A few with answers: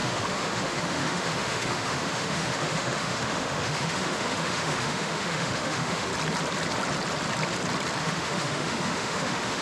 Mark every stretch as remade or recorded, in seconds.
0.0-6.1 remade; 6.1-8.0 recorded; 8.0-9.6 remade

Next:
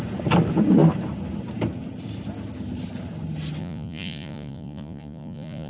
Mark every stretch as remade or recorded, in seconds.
0.0-3.6 recorded; 3.6-5.7 remade

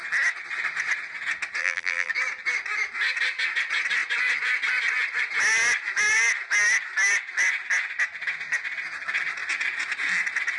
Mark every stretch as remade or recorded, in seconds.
0.0-1.6 recorded; 1.6-2.1 remade; 2.1-10.6 recorded

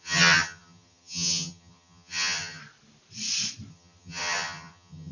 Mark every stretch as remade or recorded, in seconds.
0.0-2.6 remade; 2.6-3.7 recorded; 3.7-5.1 remade

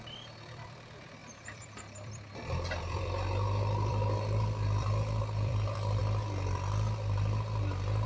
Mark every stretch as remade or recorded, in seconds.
0.0-6.0 remade; 6.0-8.1 recorded

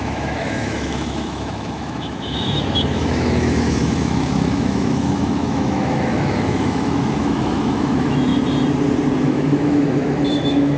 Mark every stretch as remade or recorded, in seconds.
0.0-8.3 remade; 8.3-9.2 recorded; 9.2-10.8 remade

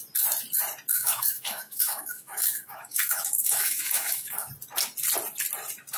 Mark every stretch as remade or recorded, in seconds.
0.0-0.9 recorded; 0.9-4.5 remade; 4.5-6.0 recorded

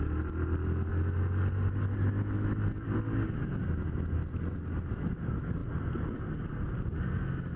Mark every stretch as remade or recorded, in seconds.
0.0-7.6 recorded